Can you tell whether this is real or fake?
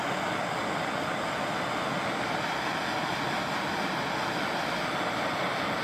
real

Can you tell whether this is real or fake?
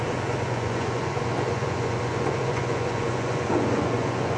fake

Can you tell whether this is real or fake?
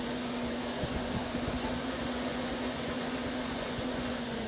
fake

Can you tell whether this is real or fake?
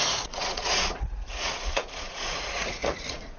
fake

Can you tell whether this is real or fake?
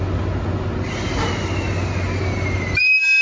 real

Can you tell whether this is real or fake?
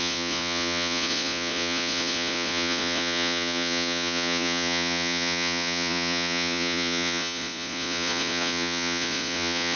fake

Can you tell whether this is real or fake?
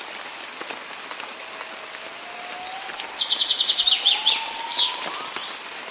real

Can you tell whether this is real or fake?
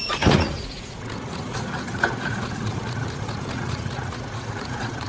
fake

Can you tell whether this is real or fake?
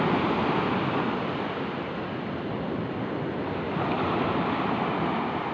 real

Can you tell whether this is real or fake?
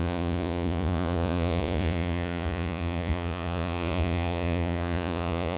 fake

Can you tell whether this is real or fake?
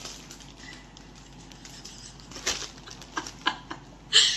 real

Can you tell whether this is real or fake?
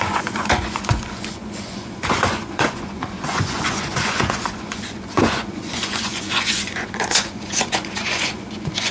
fake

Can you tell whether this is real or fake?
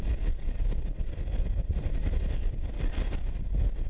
real